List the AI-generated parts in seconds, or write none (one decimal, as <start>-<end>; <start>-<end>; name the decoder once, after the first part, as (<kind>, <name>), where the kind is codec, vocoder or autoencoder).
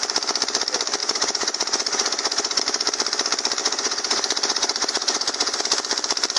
1.0-2.6 (vocoder, Vocos); 3.6-5.6